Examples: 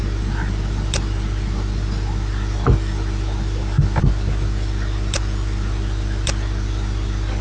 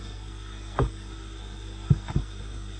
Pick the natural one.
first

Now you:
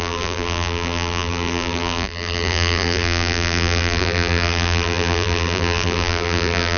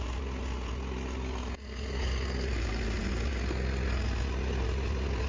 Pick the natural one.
second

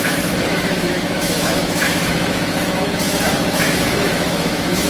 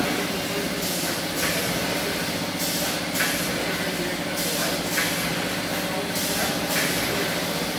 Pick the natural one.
second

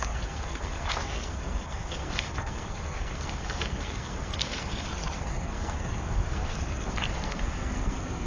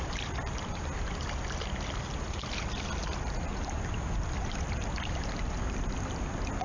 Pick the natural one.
second